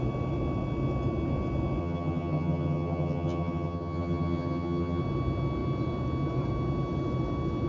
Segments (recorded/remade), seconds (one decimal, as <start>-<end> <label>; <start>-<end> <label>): 0.0-1.8 recorded; 1.8-5.0 remade; 5.0-7.7 recorded